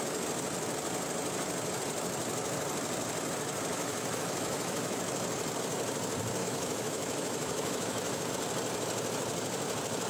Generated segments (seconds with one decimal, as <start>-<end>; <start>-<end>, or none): 3.7-5.0; 6.4-8.3